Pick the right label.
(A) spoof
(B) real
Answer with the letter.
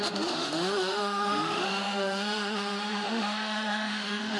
A